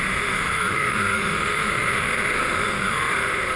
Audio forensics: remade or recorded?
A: remade